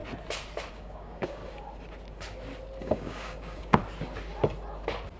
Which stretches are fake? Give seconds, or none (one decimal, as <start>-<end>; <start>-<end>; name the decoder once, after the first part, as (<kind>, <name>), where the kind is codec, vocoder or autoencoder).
0.7-1.4 (codec, DAC); 2.8-3.8